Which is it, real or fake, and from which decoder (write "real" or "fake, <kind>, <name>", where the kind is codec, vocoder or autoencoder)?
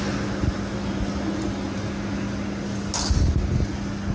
real